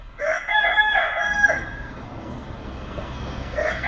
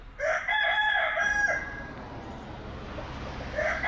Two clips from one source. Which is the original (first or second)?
second